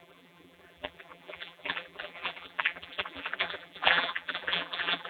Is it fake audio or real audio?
fake